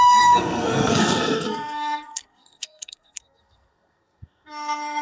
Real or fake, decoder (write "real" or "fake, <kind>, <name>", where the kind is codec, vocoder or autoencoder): fake, codec, SNAC